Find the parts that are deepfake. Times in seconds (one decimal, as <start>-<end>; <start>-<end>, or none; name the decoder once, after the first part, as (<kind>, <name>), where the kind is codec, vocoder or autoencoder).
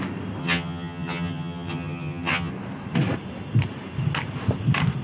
0.4-2.5 (vocoder, HiFi-GAN)